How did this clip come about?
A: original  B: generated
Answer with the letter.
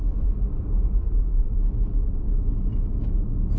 A